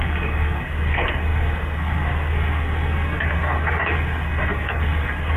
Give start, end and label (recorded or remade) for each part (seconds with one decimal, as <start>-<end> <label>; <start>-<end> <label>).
0.0-5.4 remade